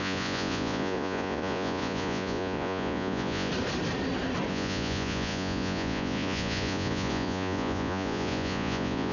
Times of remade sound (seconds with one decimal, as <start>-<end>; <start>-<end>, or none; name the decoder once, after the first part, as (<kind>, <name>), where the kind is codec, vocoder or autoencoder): 0.0-3.5 (vocoder, Vocos); 4.5-9.1